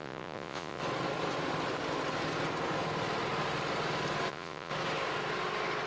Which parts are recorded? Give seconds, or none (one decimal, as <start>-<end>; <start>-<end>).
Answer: 0.8-4.3; 4.7-5.9